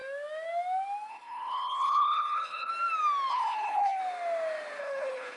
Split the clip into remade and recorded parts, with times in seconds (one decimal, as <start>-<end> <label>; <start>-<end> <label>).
0.0-1.1 recorded; 1.1-2.7 remade; 2.7-3.3 recorded; 3.3-4.0 remade; 4.0-4.8 recorded; 4.8-5.4 remade